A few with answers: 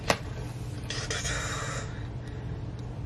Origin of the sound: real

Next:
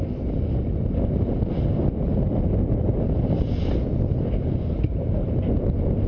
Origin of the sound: real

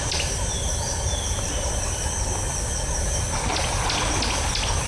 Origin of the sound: real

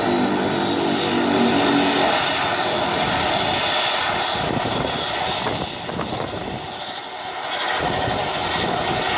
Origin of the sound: real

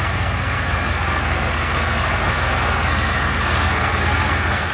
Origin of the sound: fake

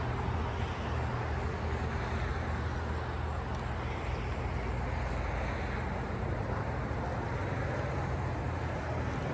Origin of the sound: real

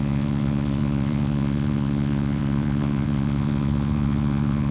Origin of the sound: fake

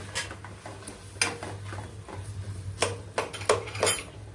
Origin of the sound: real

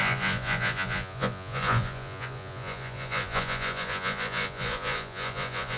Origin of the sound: fake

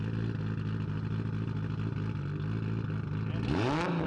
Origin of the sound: real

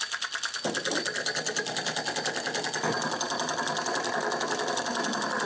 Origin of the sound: real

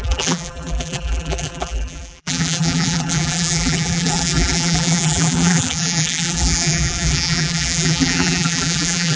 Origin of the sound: fake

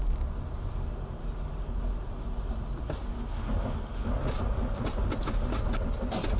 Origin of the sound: real